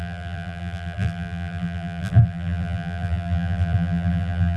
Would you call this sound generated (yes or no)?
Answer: yes